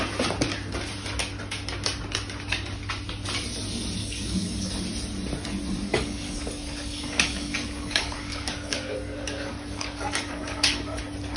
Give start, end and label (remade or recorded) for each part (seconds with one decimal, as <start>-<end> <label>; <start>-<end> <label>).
0.0-4.0 recorded; 4.0-4.7 remade; 4.7-5.9 recorded; 5.9-11.0 remade; 11.0-11.4 recorded